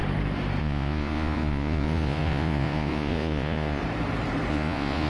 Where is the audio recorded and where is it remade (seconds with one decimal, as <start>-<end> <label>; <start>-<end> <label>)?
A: 0.0-0.6 recorded; 0.6-3.8 remade; 3.8-4.5 recorded; 4.5-5.1 remade